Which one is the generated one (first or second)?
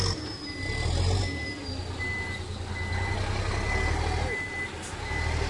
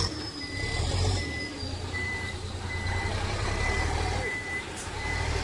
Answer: second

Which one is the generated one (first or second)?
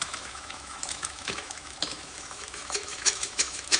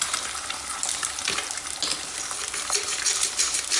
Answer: first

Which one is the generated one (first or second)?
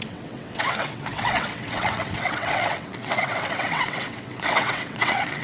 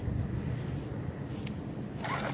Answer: first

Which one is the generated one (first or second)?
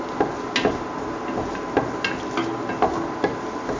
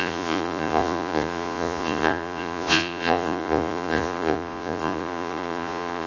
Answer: second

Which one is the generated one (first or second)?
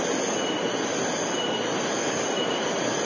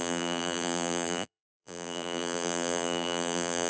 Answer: second